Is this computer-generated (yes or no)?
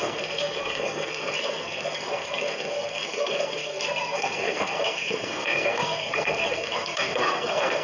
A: yes